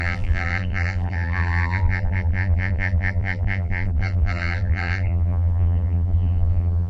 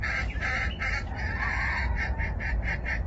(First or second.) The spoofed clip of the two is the first